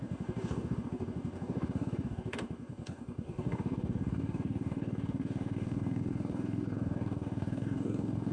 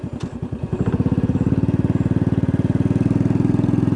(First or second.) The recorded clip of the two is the second